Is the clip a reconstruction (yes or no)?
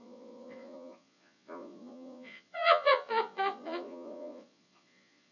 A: yes